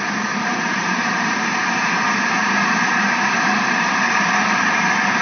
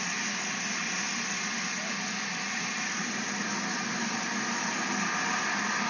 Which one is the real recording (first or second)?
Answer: second